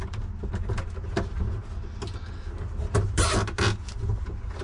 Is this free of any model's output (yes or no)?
yes